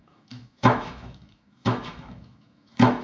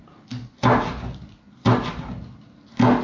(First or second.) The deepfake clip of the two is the first